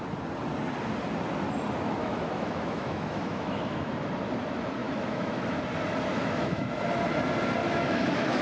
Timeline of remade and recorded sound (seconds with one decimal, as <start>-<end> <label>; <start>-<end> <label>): 0.0-2.0 recorded; 2.0-3.9 remade; 3.9-4.8 recorded; 4.8-5.6 remade; 5.6-6.1 recorded; 6.1-6.7 remade; 6.7-7.6 recorded; 7.6-8.4 remade